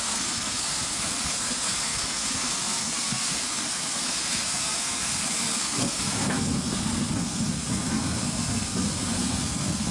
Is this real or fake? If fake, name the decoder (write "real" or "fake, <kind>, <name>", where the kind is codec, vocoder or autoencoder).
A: fake, codec, SNAC